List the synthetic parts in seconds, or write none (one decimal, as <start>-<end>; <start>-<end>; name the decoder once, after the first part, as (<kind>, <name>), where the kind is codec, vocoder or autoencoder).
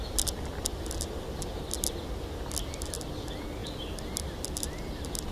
none